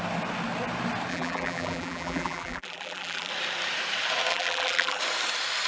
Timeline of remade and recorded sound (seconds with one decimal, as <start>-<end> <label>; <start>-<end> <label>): 0.0-1.1 recorded; 1.1-3.3 remade; 3.3-4.3 recorded; 4.3-5.0 remade; 5.0-5.7 recorded